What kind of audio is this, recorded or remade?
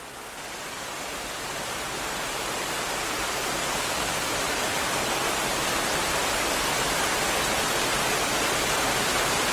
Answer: recorded